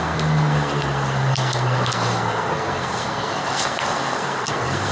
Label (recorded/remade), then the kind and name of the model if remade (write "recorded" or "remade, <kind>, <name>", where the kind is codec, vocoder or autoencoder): remade, codec, SNAC